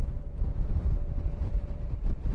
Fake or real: fake